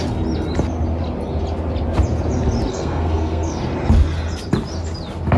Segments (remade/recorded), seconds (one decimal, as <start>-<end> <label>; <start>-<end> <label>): 0.0-2.7 recorded; 2.7-3.6 remade; 3.6-5.4 recorded